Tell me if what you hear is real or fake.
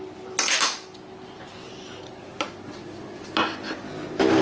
real